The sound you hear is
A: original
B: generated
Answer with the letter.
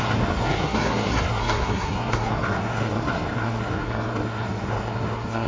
B